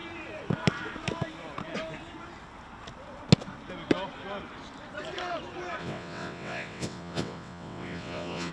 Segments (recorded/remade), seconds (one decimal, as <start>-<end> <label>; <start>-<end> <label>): 0.0-5.8 recorded; 5.8-8.5 remade